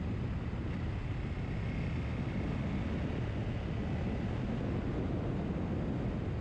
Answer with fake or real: real